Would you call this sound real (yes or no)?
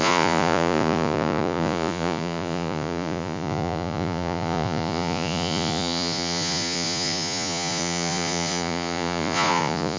no